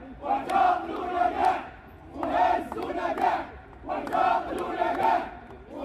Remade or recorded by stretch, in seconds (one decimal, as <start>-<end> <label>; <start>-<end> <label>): 0.0-5.8 recorded